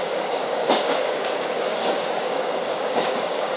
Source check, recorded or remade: remade